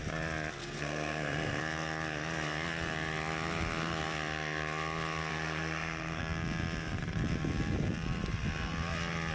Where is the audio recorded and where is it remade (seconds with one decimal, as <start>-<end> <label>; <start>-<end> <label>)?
0.0-0.6 recorded; 0.6-1.6 remade; 1.6-5.3 recorded; 5.3-6.2 remade; 6.2-9.3 recorded